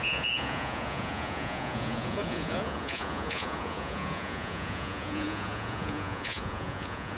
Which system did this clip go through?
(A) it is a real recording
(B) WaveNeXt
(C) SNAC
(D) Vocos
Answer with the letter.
D